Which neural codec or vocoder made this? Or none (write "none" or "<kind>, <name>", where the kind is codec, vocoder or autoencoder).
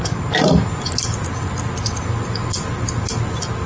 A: none